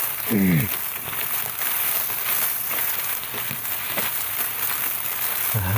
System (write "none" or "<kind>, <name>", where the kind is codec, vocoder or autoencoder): none